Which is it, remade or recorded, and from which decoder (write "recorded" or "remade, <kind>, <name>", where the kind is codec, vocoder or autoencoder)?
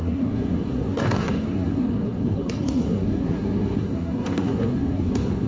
remade, codec, SNAC